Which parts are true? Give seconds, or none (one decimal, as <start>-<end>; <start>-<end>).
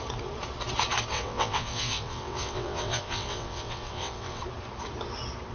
0.0-1.1; 4.4-5.5